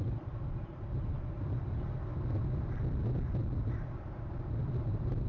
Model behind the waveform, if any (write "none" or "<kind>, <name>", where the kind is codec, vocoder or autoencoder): none